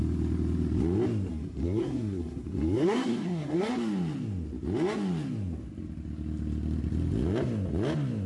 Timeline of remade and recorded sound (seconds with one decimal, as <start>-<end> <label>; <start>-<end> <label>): 0.0-1.3 recorded; 1.3-3.7 remade; 3.7-8.3 recorded